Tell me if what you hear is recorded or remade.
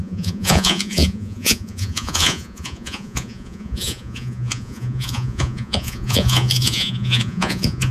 remade